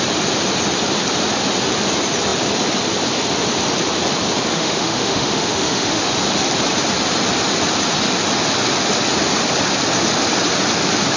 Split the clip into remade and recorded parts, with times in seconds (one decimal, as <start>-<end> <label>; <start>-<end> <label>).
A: 0.0-4.5 recorded; 4.5-6.1 remade; 6.1-11.2 recorded